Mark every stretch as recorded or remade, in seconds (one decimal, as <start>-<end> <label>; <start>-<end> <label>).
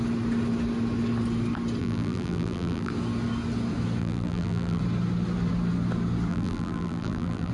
0.0-1.8 recorded; 1.8-2.9 remade; 2.9-4.0 recorded; 4.0-4.8 remade; 4.8-6.3 recorded; 6.3-7.5 remade